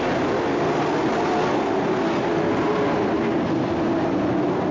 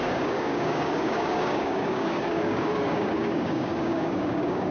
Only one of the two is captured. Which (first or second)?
first